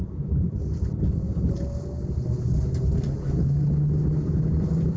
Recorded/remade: recorded